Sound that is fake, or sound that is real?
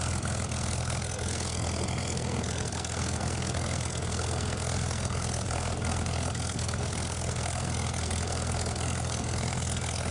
fake